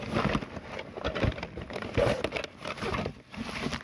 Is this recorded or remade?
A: recorded